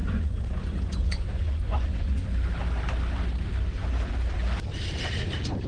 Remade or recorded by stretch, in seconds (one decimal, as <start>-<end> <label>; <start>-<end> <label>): 0.0-2.2 remade; 2.2-5.7 recorded